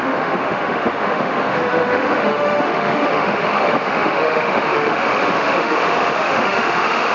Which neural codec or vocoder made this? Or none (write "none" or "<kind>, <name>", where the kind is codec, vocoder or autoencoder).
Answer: autoencoder, DAC-VAE